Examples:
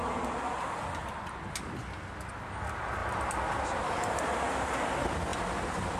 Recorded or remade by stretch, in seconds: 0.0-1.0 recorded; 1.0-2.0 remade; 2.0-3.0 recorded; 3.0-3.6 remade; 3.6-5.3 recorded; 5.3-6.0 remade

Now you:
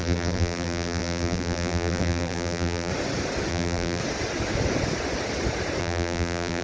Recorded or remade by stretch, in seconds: 0.0-2.9 remade; 2.9-3.5 recorded; 3.5-4.0 remade; 4.0-5.8 recorded; 5.8-6.6 remade

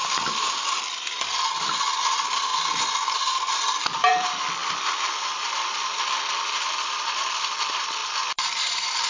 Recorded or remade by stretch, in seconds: 0.0-2.5 remade; 2.5-3.5 recorded; 3.5-4.6 remade; 4.6-5.4 recorded; 5.4-9.1 remade

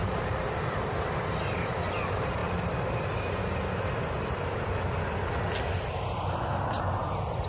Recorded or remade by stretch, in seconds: 0.0-0.6 remade; 0.6-7.5 recorded

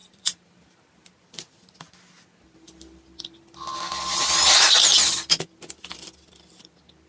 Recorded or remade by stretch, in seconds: 0.0-0.5 remade; 0.5-7.1 recorded

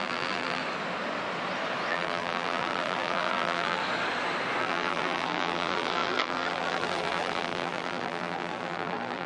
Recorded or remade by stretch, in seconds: 0.0-0.6 remade; 0.6-1.9 recorded; 1.9-3.8 remade; 3.8-4.6 recorded; 4.6-9.3 remade

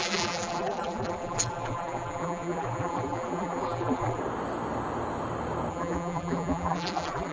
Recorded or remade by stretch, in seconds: 0.0-4.2 remade; 4.2-5.7 recorded; 5.7-7.3 remade

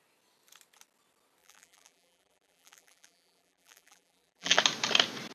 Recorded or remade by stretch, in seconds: 0.0-1.4 recorded; 1.4-4.6 remade; 4.6-5.3 recorded